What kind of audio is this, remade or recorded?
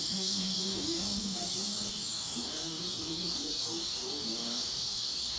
remade